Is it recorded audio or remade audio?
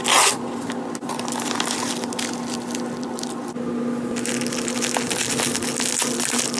recorded